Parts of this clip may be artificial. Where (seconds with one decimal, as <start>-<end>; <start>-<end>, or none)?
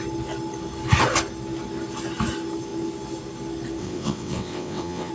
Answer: 3.8-5.1